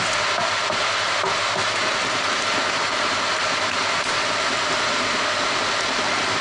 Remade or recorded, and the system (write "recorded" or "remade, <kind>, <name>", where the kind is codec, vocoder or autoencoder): recorded